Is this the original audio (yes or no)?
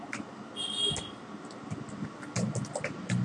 yes